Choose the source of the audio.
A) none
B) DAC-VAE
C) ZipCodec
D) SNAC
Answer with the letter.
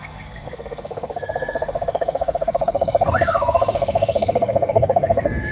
D